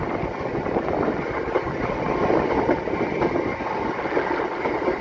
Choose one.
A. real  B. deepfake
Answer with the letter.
A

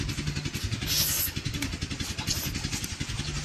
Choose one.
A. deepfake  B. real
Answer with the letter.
B